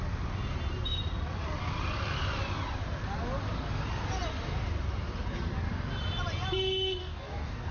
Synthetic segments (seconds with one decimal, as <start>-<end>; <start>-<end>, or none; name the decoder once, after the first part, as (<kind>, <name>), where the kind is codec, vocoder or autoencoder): 7.0-7.7 (codec, DAC)